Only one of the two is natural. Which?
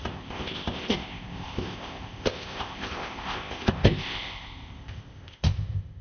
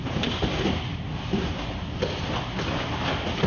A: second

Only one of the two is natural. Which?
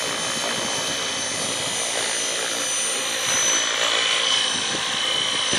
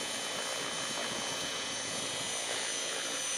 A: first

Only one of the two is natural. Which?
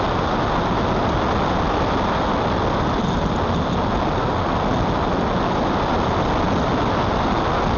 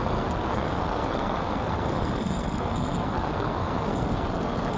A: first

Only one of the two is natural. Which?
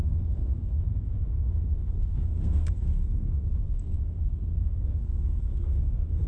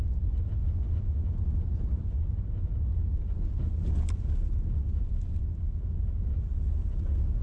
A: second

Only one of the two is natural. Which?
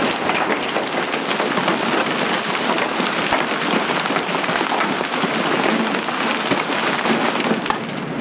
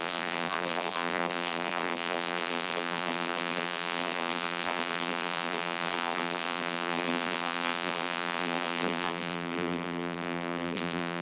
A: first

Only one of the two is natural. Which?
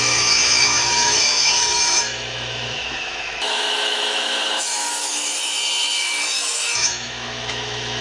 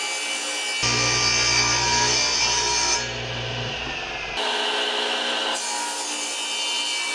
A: second